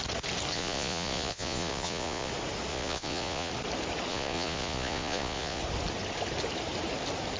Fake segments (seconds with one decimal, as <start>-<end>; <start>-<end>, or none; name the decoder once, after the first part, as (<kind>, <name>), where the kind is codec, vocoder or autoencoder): 0.5-2.3 (vocoder, Vocos); 2.7-3.5; 4.1-5.6